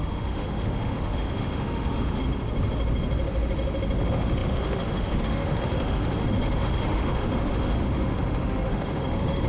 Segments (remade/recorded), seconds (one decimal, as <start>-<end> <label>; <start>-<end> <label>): 0.0-2.2 remade; 2.2-4.0 recorded; 4.0-9.5 remade